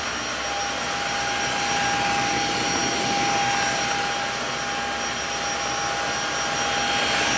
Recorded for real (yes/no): yes